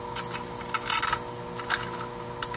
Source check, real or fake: real